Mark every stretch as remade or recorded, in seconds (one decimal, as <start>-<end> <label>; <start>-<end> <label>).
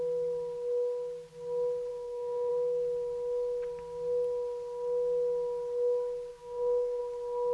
0.0-1.9 recorded; 1.9-2.5 remade; 2.5-6.3 recorded; 6.3-7.0 remade; 7.0-7.5 recorded